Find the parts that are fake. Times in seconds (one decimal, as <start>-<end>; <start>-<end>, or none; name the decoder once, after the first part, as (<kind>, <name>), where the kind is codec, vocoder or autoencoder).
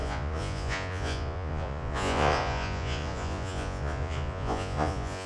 0.0-5.3 (vocoder, Vocos)